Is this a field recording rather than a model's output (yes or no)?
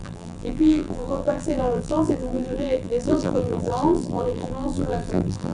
no